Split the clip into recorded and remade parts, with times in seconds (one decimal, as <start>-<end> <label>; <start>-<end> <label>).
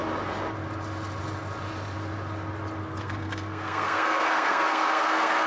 0.0-2.8 recorded; 2.8-5.5 remade